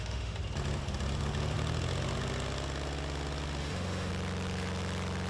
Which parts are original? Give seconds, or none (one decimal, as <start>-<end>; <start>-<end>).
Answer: 0.4-3.6; 4.1-5.3